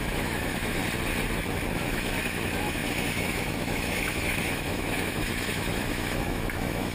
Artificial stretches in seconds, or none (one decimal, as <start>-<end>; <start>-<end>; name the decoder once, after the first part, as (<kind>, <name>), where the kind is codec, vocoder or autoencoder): 0.0-0.8 (autoencoder, DAC-VAE); 1.7-6.9